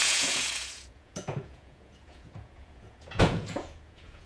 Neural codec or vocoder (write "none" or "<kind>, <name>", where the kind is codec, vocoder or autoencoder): vocoder, Vocos